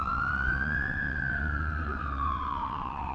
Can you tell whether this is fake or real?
fake